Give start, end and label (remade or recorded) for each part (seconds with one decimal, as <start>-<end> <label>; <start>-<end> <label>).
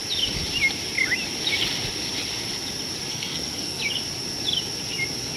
0.0-3.1 recorded; 3.1-3.8 remade; 3.8-5.4 recorded